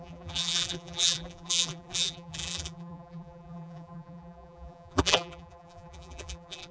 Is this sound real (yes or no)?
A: no